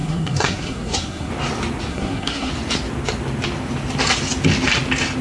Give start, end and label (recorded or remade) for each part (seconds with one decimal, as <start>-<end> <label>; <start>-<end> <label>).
0.0-1.3 remade; 1.3-1.9 recorded; 1.9-2.5 remade; 2.5-5.2 recorded